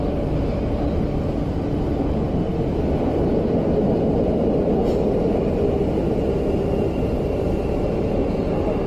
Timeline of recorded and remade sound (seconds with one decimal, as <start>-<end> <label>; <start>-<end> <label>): 0.0-8.9 recorded